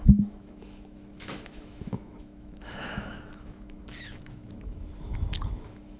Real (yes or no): no